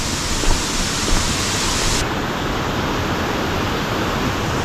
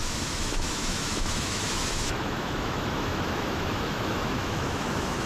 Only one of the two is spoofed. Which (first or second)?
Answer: second